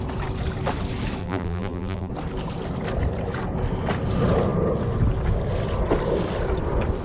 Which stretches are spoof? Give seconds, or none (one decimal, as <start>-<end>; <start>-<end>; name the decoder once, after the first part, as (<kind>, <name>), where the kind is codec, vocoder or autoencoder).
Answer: 1.2-2.1 (vocoder, BigVGAN v2)